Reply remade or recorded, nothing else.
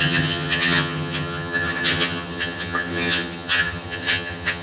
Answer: remade